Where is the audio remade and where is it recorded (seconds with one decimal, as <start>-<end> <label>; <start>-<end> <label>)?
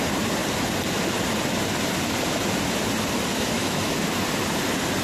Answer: 0.0-3.3 recorded; 3.3-3.9 remade; 3.9-5.0 recorded